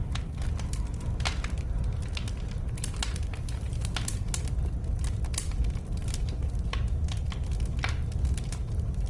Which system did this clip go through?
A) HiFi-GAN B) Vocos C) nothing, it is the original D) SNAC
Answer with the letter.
C